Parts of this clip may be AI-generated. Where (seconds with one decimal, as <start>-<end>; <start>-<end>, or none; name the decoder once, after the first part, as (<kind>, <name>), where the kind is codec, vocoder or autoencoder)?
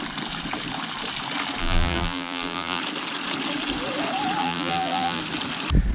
1.6-2.8 (vocoder, BigVGAN v2); 4.4-5.2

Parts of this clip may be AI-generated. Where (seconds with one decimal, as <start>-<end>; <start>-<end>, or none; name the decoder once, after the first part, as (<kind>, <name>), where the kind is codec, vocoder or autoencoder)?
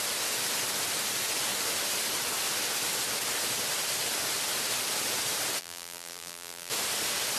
5.6-6.7 (vocoder, BigVGAN v2)